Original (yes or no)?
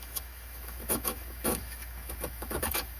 no